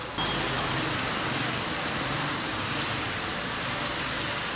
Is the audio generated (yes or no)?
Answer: no